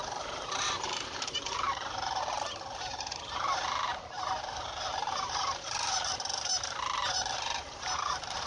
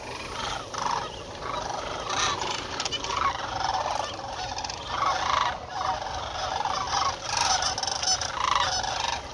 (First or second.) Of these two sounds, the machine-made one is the first